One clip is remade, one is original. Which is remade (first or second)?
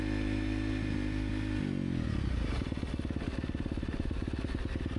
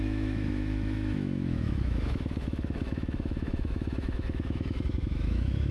second